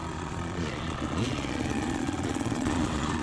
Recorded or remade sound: remade